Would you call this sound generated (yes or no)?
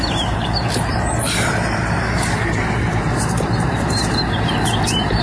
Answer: yes